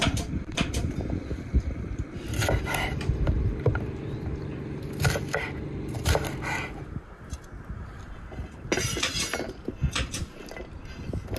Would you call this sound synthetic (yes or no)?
no